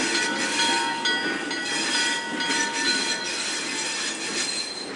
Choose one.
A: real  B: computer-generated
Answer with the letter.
A